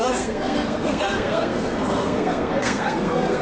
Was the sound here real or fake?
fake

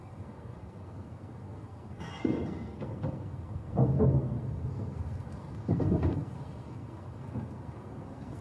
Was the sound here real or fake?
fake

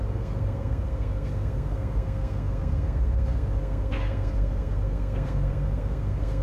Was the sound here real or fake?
fake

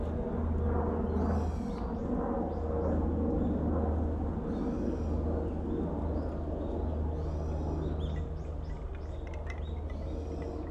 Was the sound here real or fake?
real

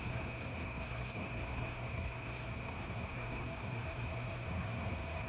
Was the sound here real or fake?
fake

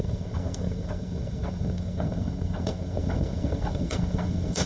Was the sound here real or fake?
fake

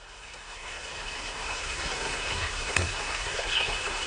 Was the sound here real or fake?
fake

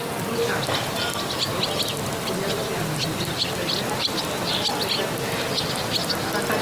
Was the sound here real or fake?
real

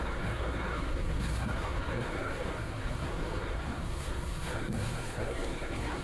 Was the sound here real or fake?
fake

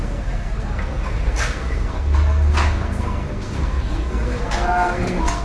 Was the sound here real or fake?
fake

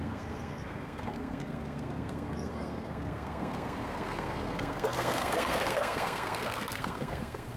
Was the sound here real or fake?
fake